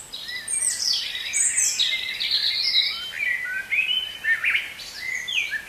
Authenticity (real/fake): real